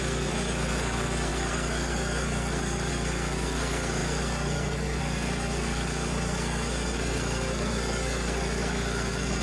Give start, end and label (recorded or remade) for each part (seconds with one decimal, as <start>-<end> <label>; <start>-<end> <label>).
0.0-9.4 remade